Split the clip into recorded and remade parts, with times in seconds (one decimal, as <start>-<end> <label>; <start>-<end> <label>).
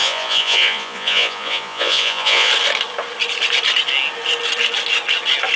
0.0-2.5 remade; 2.5-5.6 recorded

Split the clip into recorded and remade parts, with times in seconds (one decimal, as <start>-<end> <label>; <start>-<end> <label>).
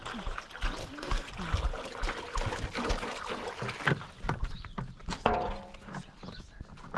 0.0-0.8 recorded; 0.8-1.3 remade; 1.3-7.0 recorded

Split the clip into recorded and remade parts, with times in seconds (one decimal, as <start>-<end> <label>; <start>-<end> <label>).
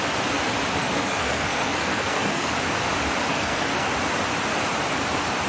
0.0-0.8 recorded; 0.8-2.5 remade; 2.5-3.3 recorded; 3.3-3.9 remade; 3.9-5.5 recorded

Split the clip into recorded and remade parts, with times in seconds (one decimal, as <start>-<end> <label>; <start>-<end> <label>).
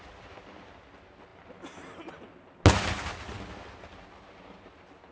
0.0-5.1 recorded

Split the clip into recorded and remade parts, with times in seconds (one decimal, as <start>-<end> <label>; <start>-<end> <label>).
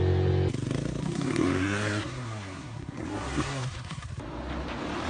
0.0-1.0 recorded; 1.0-4.1 remade; 4.1-5.1 recorded